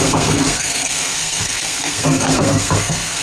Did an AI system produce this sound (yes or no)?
yes